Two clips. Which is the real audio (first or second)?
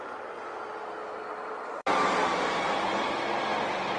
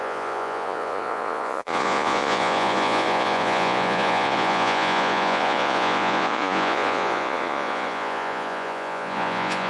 first